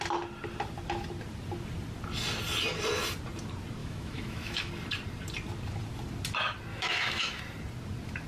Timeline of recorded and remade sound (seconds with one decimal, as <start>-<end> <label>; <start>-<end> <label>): 0.0-3.8 recorded; 3.8-4.7 remade; 4.7-6.7 recorded; 6.7-7.4 remade; 7.4-8.3 recorded